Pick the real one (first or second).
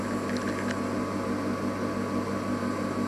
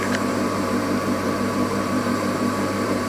first